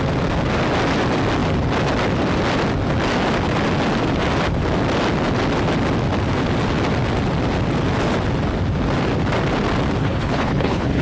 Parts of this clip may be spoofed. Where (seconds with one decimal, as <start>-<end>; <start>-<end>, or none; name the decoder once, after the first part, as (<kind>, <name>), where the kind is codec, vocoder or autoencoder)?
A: 10.0-11.0 (codec, HILCodec)